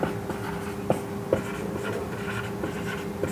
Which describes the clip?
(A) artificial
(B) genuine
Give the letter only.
B